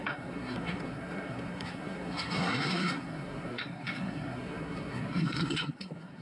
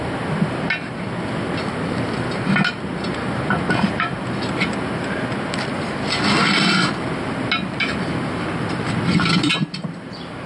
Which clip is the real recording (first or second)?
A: second